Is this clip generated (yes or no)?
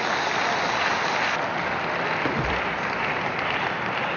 yes